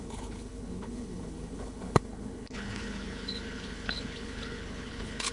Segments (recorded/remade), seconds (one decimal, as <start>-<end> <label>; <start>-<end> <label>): 0.0-5.3 remade